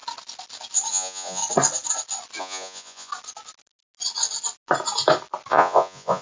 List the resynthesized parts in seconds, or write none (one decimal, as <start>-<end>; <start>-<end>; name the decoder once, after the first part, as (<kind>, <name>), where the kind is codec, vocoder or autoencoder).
0.9-1.4 (vocoder, Vocos); 2.4-3.1; 5.5-6.2